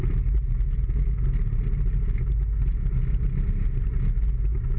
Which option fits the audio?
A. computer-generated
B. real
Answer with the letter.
B